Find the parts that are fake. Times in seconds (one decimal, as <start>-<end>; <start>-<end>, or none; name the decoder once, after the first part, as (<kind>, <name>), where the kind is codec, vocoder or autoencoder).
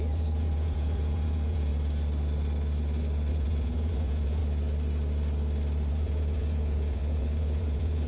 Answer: 0.0-1.7 (vocoder, Vocos); 3.3-4.4; 5.9-8.1